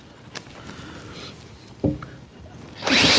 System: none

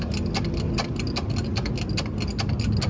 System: none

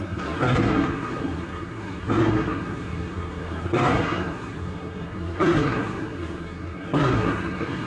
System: codec, SNAC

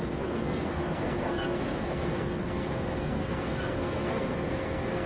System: codec, SNAC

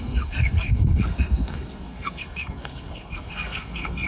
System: codec, SNAC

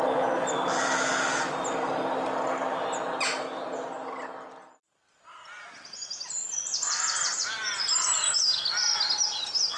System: none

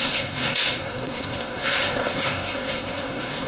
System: codec, SNAC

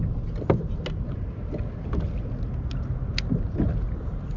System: none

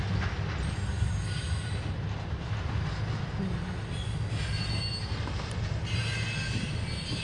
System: none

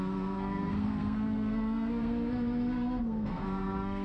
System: codec, SNAC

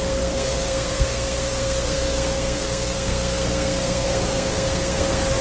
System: codec, SNAC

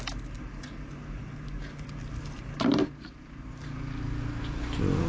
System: none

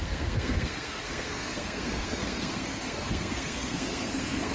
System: codec, SNAC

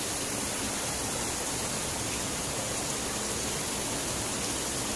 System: none